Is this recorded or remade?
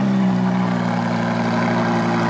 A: recorded